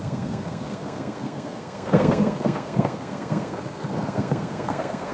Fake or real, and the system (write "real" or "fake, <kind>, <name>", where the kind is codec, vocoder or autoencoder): fake, codec, SNAC